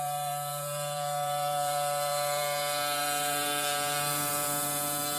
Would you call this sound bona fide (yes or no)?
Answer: no